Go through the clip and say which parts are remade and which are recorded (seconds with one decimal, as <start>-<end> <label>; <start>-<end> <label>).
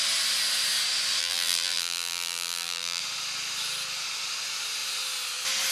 0.0-1.2 recorded; 1.2-3.0 remade; 3.0-5.7 recorded